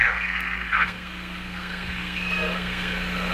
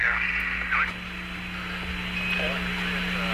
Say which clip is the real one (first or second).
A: second